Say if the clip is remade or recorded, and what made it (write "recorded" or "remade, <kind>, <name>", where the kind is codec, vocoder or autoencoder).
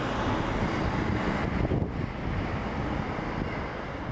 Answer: recorded